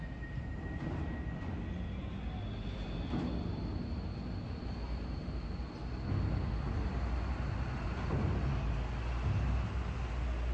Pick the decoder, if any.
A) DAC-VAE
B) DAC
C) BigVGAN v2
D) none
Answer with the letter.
D